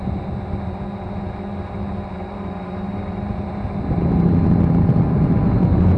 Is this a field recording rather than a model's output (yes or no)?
yes